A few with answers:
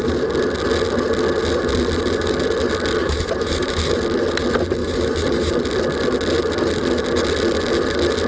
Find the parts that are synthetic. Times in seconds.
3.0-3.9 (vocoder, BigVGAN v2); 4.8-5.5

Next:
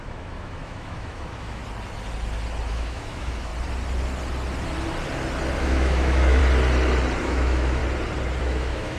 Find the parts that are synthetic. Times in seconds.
0.0-1.6 (autoencoder, DAC-VAE); 2.7-3.5; 5.6-6.4; 7.2-7.8; 8.4-9.0

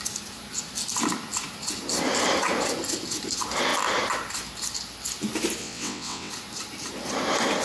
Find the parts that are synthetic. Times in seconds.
5.6-6.3 (vocoder, WaveNeXt)

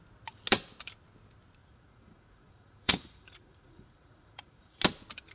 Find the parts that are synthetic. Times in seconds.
1.6-4.8 (vocoder, Vocos)